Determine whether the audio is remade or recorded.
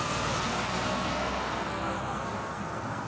remade